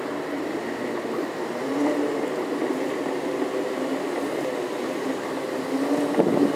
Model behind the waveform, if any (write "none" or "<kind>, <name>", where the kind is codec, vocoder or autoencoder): none